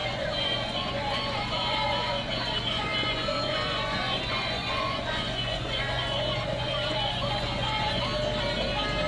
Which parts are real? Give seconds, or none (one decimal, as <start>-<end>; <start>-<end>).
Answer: 8.1-9.1